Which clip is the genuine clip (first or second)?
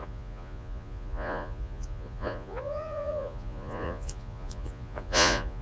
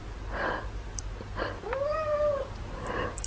second